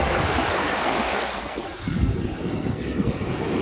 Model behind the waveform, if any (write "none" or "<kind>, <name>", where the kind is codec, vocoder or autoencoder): codec, SNAC